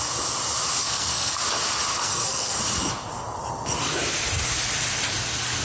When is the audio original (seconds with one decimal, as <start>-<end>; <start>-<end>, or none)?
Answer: 0.0-0.8; 1.4-1.9; 2.6-5.6